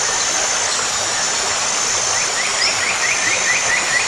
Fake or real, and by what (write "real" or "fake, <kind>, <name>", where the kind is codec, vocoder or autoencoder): real